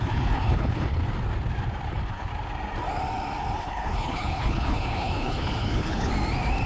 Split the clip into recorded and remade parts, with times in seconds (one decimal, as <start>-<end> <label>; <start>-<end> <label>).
0.0-1.0 remade; 1.0-1.9 recorded; 1.9-2.3 remade; 2.3-3.6 recorded; 3.6-6.1 remade; 6.1-6.7 recorded